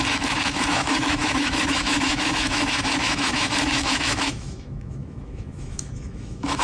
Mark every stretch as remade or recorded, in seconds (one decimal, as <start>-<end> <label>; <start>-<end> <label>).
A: 0.0-6.6 remade